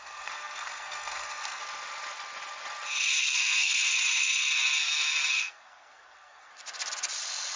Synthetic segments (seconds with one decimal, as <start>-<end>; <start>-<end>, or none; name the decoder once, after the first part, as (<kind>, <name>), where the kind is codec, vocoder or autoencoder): 0.0-1.6 (codec, SNAC); 3.2-3.9; 5.3-6.5